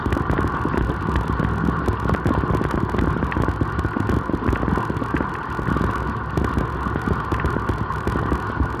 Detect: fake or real real